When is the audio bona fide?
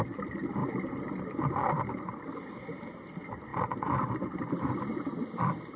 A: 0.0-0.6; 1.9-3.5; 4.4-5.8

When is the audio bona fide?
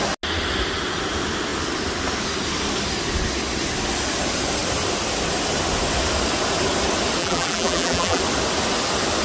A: 0.0-7.2; 8.2-9.2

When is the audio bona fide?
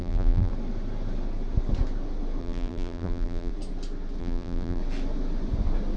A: 0.5-2.4; 3.5-4.2; 4.8-6.0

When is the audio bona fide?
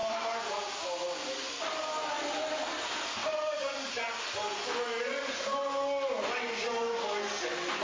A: 0.8-3.2; 3.9-7.8